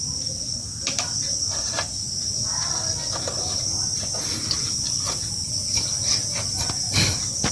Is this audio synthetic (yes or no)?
no